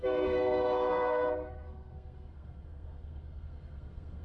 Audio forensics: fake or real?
fake